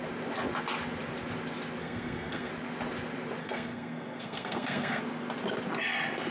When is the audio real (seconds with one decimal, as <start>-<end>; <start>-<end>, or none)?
0.0-1.8; 2.5-3.4; 5.0-6.3